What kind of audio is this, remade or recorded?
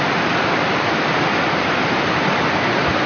remade